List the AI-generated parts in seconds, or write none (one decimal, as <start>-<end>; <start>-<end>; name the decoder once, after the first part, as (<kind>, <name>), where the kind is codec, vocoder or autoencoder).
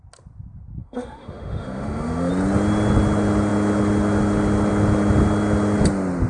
0.8-2.3 (autoencoder, DAC-VAE)